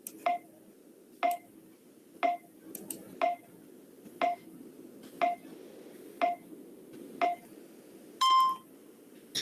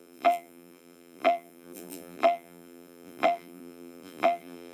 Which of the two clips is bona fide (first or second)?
first